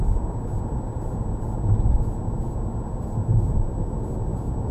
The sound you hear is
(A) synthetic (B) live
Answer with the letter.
B